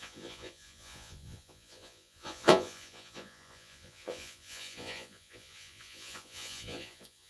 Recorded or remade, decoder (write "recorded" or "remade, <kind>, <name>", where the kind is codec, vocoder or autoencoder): remade, vocoder, Vocos